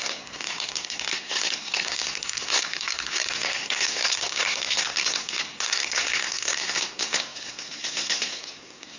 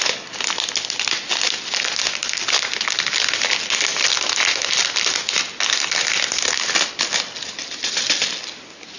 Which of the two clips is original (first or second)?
second